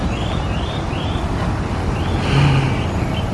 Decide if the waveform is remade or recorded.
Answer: recorded